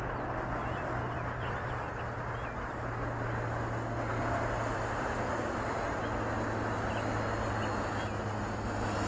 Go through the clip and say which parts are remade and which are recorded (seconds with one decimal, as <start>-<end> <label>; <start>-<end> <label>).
0.0-0.6 recorded; 0.6-2.0 remade; 2.0-4.1 recorded; 4.1-5.2 remade; 5.2-9.1 recorded